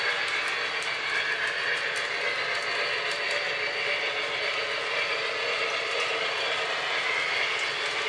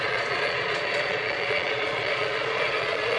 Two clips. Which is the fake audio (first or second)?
second